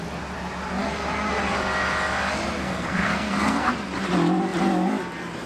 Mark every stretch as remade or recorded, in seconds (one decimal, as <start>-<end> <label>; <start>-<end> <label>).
0.0-2.6 recorded; 2.6-3.7 remade; 3.7-5.5 recorded